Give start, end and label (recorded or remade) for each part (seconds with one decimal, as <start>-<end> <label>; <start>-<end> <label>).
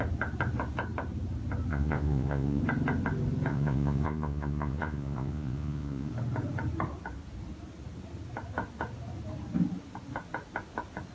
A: 0.0-1.7 recorded; 1.7-2.6 remade; 2.6-3.5 recorded; 3.5-6.1 remade; 6.1-11.1 recorded